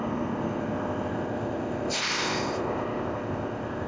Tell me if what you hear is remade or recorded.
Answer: remade